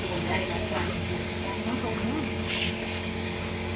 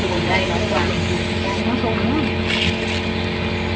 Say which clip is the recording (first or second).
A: second